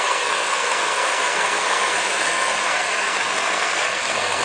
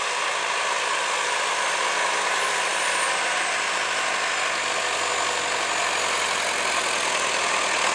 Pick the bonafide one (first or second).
second